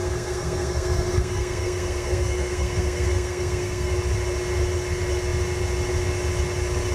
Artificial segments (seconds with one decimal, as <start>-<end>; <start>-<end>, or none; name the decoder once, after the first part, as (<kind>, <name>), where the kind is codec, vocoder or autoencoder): 0.0-3.9 (codec, SNAC)